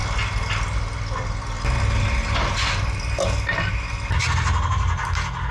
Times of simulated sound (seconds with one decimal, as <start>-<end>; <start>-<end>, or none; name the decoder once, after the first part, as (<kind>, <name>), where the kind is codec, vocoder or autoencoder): none